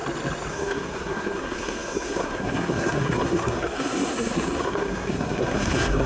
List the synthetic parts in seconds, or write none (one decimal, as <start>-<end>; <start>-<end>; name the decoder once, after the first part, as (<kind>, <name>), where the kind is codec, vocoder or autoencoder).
0.5-6.1 (codec, SNAC)